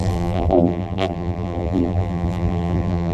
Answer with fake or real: fake